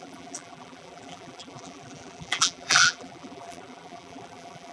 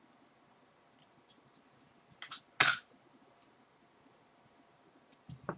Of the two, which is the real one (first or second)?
second